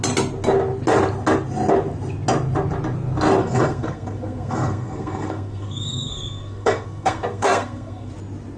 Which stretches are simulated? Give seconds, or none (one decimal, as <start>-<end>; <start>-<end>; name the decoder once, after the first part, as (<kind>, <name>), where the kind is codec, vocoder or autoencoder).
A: 3.4-8.1 (codec, SNAC)

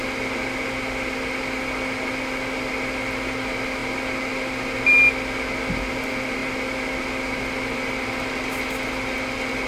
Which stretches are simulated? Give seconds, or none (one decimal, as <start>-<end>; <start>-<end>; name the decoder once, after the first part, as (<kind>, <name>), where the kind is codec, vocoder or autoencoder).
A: none